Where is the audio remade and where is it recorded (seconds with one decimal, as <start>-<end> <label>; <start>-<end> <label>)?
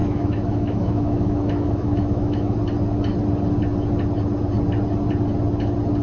0.0-2.6 remade; 2.6-6.0 recorded